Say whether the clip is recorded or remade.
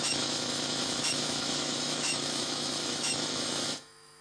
remade